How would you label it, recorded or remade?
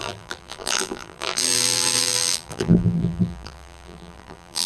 remade